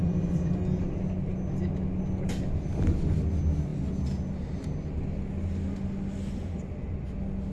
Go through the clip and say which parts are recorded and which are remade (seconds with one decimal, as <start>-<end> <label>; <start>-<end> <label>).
0.0-7.5 recorded